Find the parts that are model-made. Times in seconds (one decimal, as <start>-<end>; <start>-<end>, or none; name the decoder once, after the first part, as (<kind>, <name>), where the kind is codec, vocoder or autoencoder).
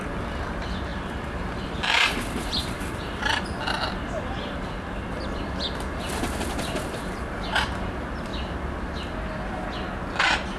0.9-5.2 (vocoder, BigVGAN v2)